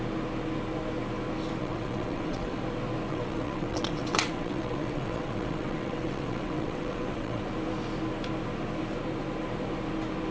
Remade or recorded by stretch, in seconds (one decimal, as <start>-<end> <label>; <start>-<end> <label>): 0.0-1.6 recorded; 1.6-2.6 remade; 2.6-3.1 recorded; 3.1-7.4 remade; 7.4-10.3 recorded